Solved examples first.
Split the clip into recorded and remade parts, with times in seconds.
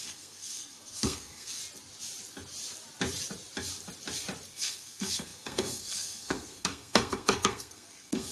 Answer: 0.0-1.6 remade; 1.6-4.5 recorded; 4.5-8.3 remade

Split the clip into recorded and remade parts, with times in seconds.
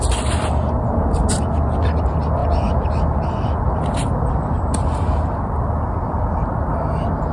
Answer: 0.0-7.3 recorded